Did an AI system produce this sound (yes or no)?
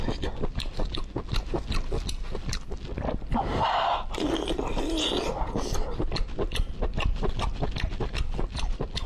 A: no